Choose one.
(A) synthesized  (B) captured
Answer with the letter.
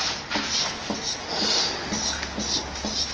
B